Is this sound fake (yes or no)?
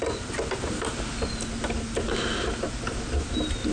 no